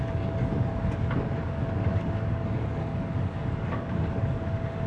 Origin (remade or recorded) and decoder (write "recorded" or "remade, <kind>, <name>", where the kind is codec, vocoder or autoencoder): remade, codec, DAC